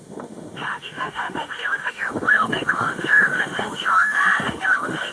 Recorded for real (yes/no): no